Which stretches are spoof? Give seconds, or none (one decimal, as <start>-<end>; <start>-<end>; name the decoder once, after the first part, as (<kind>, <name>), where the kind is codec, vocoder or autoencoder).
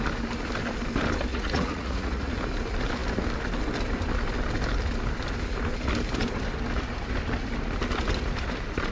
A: 1.3-2.3 (vocoder, Vocos)